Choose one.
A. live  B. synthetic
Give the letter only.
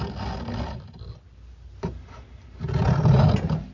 A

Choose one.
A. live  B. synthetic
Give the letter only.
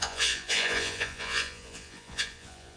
B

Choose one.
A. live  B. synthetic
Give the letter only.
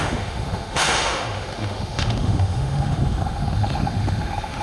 B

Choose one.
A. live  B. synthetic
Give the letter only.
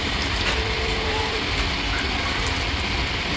B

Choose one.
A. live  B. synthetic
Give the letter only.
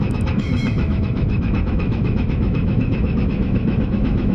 B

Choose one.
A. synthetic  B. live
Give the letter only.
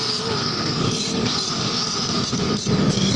A